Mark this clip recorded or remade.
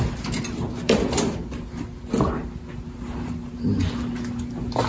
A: recorded